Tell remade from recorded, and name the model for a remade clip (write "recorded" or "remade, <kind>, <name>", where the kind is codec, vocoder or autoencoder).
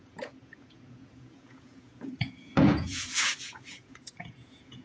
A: remade, vocoder, Vocos